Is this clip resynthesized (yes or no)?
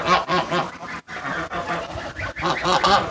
no